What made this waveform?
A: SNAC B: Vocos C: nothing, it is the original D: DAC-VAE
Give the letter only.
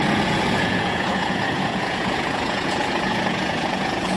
B